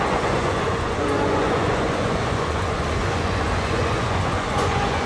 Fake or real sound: fake